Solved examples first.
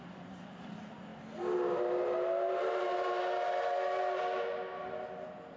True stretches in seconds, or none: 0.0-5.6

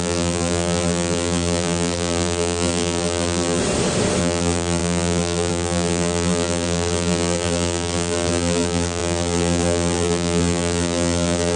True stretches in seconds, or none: 3.6-4.2

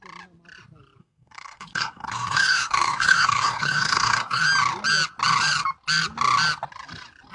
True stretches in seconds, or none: 0.0-1.0; 4.4-7.3

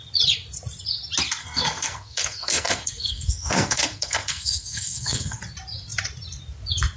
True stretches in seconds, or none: 0.0-1.4; 5.4-7.0

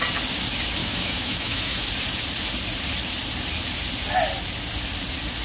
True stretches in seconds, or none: 0.0-0.8; 1.8-5.4